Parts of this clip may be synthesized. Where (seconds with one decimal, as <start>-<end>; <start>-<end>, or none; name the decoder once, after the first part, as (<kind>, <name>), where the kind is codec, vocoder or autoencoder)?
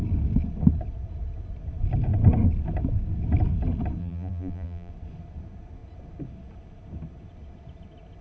4.0-4.9 (vocoder, BigVGAN v2)